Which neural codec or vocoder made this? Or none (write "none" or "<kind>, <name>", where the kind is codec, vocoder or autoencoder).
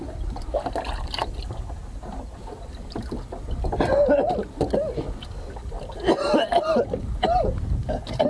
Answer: none